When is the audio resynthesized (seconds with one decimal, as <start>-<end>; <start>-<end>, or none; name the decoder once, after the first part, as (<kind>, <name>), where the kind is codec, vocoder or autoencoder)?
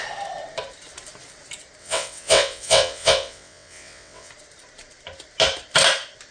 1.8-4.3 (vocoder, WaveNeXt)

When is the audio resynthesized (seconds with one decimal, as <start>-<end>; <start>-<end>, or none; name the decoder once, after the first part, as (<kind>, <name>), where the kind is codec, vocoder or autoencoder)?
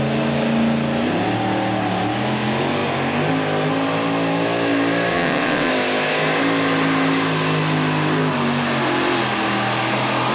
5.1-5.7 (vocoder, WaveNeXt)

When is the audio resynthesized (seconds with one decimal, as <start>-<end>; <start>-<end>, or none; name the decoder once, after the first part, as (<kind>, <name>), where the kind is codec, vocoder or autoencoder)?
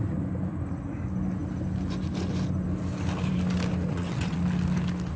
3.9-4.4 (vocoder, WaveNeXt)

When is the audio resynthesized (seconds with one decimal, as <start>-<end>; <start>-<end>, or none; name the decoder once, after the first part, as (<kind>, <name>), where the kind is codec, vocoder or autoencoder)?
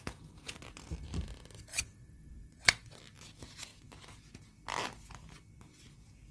1.7-3.0 (vocoder, WaveNeXt)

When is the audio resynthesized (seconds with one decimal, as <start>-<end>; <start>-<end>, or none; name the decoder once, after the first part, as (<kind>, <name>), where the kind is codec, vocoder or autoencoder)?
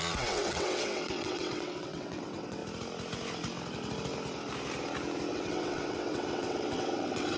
0.0-2.6 (vocoder, WaveNeXt); 5.3-7.4